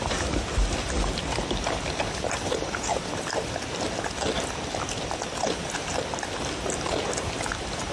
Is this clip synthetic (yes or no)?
no